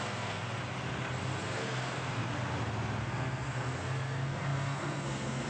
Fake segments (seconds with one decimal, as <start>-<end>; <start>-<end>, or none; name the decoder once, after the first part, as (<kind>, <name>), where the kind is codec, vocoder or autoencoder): 0.0-0.6 (codec, SNAC); 1.4-2.2; 3.0-5.5